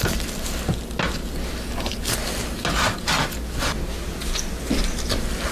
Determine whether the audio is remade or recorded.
recorded